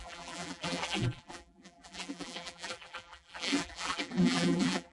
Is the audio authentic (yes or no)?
no